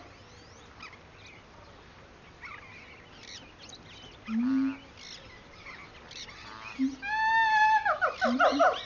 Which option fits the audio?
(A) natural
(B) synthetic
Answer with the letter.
A